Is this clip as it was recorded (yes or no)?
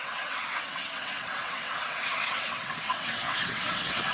no